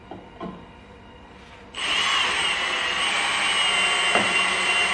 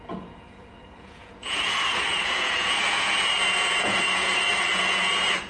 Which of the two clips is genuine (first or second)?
first